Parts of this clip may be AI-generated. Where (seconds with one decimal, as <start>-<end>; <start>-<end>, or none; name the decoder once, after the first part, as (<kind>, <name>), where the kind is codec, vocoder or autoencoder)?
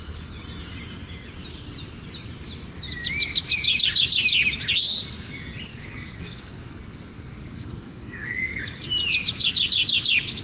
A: 5.7-8.6 (codec, SNAC)